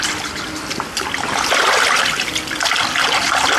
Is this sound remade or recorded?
recorded